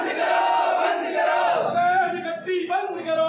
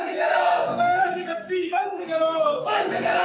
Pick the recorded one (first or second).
first